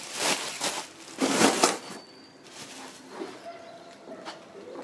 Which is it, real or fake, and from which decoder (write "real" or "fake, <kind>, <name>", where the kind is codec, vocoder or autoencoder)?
fake, vocoder, BigVGAN v2